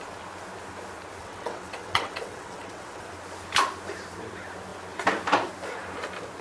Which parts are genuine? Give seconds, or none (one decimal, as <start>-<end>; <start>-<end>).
0.0-1.2; 3.0-6.4